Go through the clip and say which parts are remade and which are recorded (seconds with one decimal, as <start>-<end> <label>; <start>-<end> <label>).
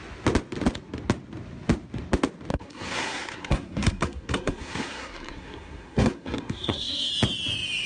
0.0-2.5 recorded; 2.5-7.1 remade; 7.1-7.9 recorded